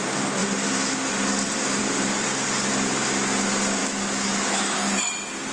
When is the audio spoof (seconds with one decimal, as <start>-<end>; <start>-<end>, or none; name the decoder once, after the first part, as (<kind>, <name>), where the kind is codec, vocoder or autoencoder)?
3.8-5.0 (autoencoder, DAC-VAE)